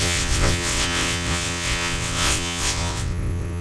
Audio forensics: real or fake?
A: fake